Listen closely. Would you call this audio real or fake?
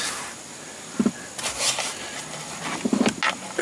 real